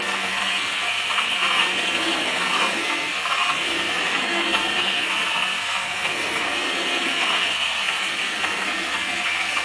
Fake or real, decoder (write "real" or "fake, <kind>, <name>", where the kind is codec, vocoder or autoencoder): fake, codec, SNAC